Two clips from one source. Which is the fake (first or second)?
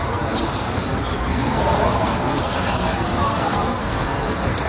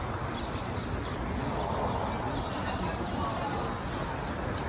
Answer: first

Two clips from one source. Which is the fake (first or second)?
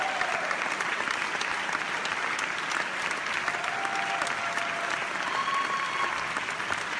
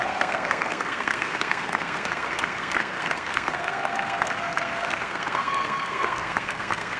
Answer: second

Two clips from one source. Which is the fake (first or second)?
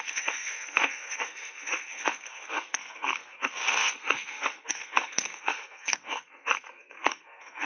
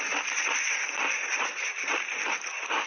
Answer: first